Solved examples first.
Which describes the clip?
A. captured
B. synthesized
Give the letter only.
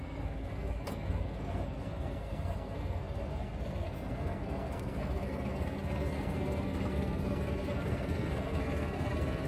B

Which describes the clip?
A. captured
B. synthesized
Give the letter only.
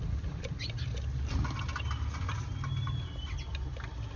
A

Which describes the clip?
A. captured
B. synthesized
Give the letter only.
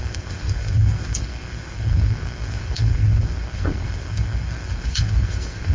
B